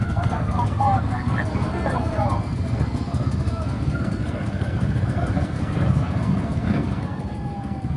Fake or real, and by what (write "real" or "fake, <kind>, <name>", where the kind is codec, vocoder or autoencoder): fake, codec, SNAC